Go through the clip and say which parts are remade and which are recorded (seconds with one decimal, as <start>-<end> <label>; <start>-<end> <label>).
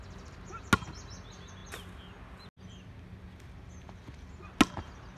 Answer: 0.0-5.2 recorded